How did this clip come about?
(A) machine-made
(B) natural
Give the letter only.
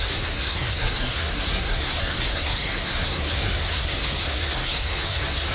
A